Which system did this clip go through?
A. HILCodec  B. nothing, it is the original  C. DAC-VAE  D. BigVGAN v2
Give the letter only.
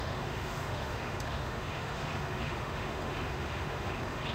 C